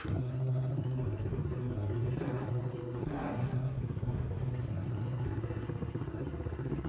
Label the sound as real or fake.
fake